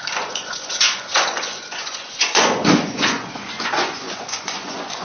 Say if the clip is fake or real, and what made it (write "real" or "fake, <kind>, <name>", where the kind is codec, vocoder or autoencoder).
fake, vocoder, Vocos